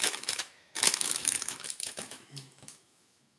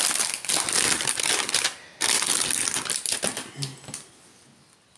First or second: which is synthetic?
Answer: first